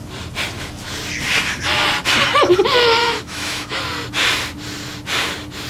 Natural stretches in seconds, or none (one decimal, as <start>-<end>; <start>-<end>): 0.0-3.0; 3.8-5.7